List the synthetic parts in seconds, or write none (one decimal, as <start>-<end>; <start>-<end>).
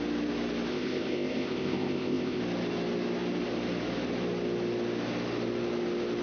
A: 0.7-2.4